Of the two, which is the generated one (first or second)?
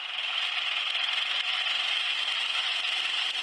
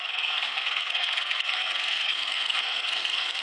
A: second